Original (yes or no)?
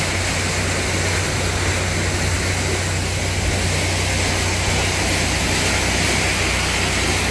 yes